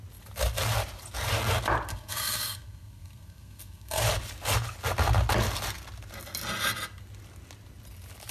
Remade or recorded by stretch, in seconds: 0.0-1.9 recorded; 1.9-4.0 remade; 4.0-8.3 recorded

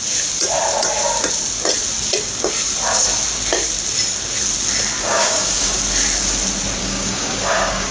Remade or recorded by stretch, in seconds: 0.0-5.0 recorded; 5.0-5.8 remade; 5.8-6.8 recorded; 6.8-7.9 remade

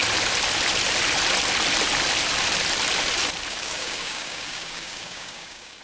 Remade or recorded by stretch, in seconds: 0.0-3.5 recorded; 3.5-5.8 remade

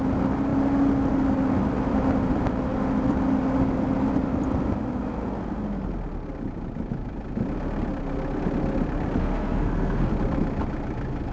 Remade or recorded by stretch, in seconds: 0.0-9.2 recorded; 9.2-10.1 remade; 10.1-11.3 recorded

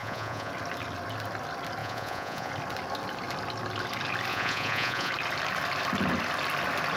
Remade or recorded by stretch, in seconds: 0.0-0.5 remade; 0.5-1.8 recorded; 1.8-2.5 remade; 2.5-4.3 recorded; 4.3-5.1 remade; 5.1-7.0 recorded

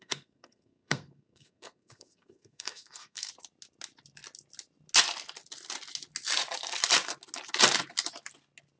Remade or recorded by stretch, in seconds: 0.0-3.3 remade; 3.3-8.8 recorded

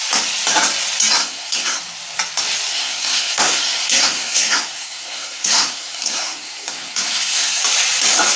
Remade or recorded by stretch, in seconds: 0.0-1.2 recorded; 1.2-1.8 remade; 1.8-2.7 recorded; 2.7-7.6 remade; 7.6-8.4 recorded